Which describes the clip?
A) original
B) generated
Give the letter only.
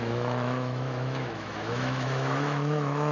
B